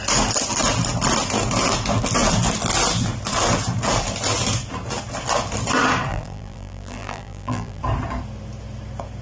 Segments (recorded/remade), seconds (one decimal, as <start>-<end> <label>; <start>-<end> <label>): 0.0-6.1 recorded; 6.1-7.8 remade; 7.8-9.2 recorded